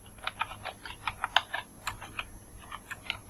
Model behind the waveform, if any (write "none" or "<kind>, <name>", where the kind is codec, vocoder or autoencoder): none